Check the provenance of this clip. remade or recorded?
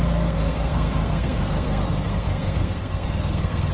remade